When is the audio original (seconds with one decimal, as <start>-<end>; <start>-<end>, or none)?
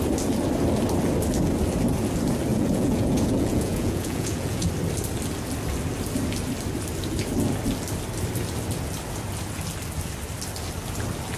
0.0-2.5; 4.7-11.4